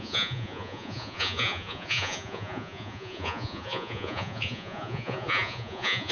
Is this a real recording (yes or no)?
no